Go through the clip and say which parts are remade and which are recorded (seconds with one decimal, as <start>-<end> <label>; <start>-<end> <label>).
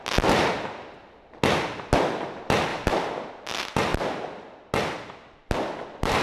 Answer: 0.0-2.7 recorded; 2.7-3.3 remade; 3.3-6.2 recorded